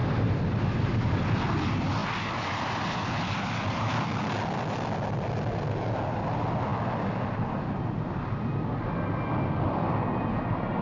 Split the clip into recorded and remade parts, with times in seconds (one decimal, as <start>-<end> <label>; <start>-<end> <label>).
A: 0.0-10.8 recorded

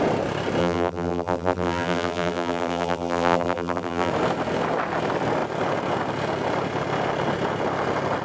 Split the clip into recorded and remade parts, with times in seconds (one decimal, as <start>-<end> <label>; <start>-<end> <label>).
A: 0.0-0.6 recorded; 0.6-4.1 remade; 4.1-8.2 recorded

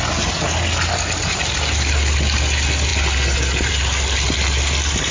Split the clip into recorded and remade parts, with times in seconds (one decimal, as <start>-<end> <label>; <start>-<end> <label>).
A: 0.0-5.1 recorded

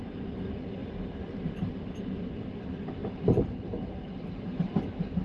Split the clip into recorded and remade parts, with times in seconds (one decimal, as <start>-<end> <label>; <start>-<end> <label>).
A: 0.0-3.0 remade; 3.0-3.6 recorded; 3.6-5.2 remade

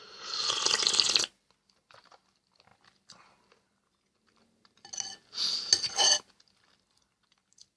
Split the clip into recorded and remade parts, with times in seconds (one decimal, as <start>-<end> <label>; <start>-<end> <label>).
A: 0.0-7.8 recorded

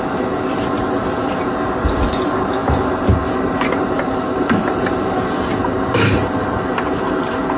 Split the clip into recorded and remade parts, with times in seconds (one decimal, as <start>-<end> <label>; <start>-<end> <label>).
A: 0.0-7.6 recorded

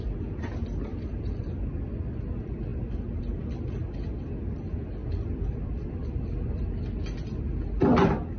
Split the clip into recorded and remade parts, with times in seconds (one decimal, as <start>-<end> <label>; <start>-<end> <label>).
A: 0.0-0.9 recorded; 0.9-1.5 remade; 1.5-5.0 recorded; 5.0-7.0 remade; 7.0-8.4 recorded